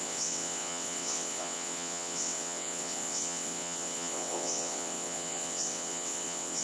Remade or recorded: remade